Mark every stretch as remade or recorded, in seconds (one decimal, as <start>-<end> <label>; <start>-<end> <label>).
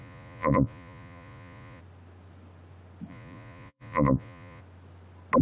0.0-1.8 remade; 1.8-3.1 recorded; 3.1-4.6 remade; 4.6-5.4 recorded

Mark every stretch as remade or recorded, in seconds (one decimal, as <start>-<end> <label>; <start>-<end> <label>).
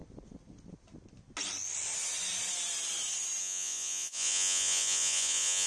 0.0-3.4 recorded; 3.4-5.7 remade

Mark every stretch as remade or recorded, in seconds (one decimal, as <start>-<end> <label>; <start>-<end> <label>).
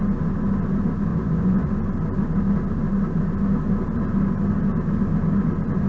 0.0-1.1 recorded; 1.1-1.7 remade; 1.7-5.9 recorded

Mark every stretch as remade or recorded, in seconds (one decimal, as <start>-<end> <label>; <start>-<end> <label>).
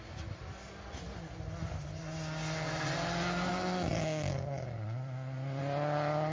0.0-6.3 recorded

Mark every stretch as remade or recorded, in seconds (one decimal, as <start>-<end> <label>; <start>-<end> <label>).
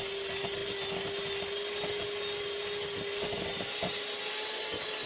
0.0-5.1 recorded